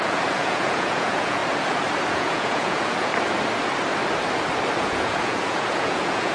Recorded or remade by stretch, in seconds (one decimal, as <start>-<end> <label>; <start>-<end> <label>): 0.0-1.4 remade; 1.4-2.1 recorded; 2.1-3.1 remade; 3.1-4.8 recorded; 4.8-6.3 remade